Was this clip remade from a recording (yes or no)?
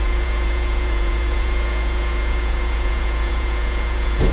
yes